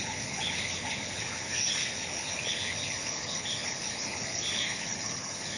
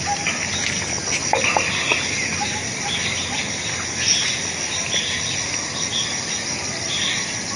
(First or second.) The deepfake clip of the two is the first